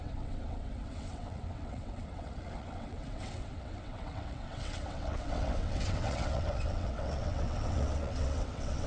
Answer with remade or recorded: remade